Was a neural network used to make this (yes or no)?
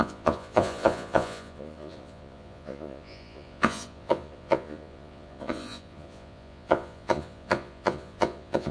yes